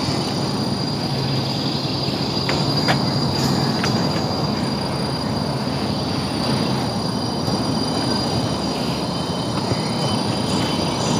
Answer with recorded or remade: recorded